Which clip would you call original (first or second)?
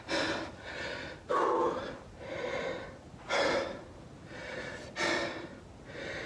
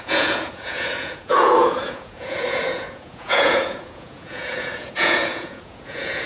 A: first